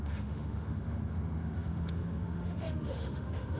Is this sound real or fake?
fake